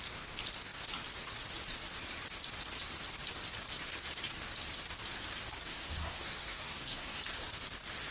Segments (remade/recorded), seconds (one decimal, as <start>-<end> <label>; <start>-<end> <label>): 0.0-5.7 recorded; 5.7-7.2 remade; 7.2-8.1 recorded